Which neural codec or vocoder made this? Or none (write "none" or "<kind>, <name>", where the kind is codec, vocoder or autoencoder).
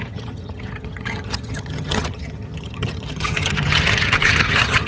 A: vocoder, HiFi-GAN